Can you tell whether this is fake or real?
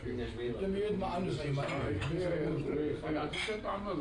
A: real